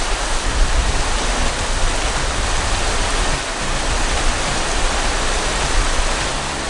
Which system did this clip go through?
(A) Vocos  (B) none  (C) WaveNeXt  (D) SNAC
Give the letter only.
B